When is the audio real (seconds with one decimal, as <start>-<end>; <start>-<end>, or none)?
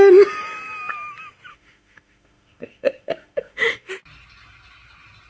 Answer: 0.0-1.5; 3.9-5.3